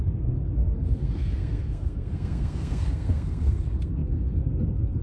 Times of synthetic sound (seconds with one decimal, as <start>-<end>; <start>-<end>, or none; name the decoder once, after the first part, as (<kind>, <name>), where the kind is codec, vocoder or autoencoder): 0.0-5.0 (codec, SNAC)